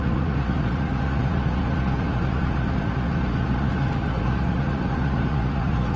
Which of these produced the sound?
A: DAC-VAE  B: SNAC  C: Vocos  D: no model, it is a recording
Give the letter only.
C